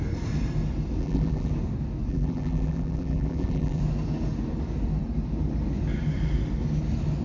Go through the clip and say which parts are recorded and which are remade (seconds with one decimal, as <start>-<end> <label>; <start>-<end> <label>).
0.0-1.0 recorded; 1.0-1.5 remade; 1.5-2.1 recorded; 2.1-3.8 remade; 3.8-7.2 recorded